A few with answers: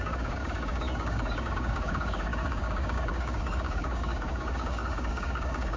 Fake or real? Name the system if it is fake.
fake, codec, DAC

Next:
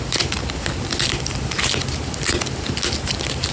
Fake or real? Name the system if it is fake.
real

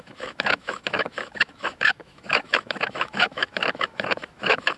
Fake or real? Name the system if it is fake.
fake, autoencoder, DAC-VAE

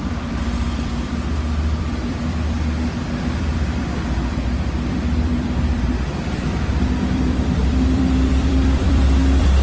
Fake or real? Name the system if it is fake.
fake, vocoder, BigVGAN v2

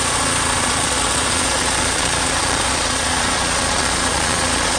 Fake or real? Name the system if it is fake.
fake, vocoder, Vocos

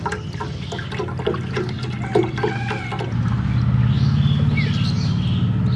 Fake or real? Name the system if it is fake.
real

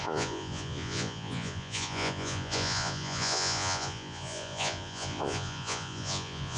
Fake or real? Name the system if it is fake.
fake, vocoder, Vocos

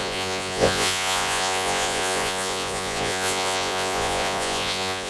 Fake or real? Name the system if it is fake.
fake, vocoder, Vocos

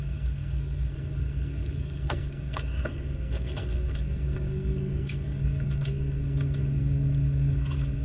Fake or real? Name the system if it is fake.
fake, codec, SNAC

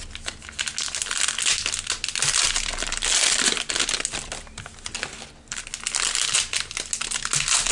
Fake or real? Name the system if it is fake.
real